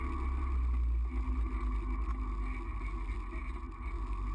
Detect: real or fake real